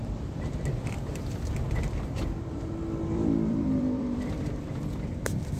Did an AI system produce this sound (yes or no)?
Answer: yes